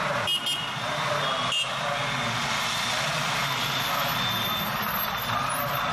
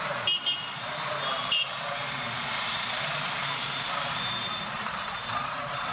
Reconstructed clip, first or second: second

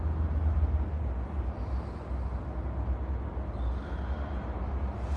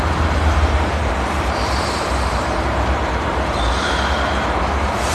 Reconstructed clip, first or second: second